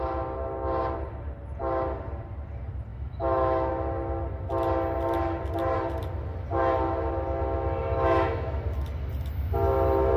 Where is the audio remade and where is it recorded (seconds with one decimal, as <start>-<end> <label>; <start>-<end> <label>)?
0.0-2.9 recorded; 2.9-3.7 remade; 3.7-7.8 recorded; 7.8-8.6 remade; 8.6-10.2 recorded